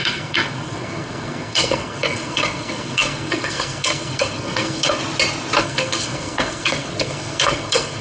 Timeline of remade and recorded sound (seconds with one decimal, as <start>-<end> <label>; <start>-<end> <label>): 0.0-5.0 remade; 5.0-5.6 recorded; 5.6-8.0 remade